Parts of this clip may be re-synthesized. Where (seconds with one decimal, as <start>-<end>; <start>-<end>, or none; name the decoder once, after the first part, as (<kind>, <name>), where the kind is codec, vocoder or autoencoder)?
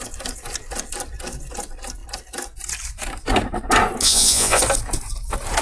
4.0-4.6 (vocoder, Vocos)